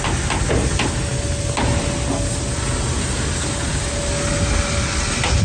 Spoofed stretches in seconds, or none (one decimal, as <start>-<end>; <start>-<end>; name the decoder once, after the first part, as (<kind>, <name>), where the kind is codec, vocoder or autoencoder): none